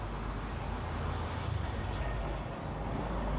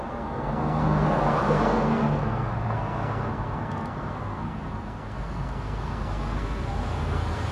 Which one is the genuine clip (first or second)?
first